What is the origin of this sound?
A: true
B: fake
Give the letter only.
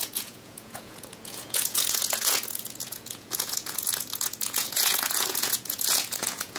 B